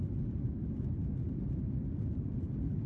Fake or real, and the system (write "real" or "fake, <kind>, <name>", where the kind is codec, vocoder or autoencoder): real